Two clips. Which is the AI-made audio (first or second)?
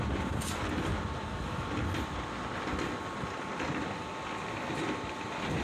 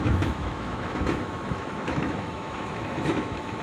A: second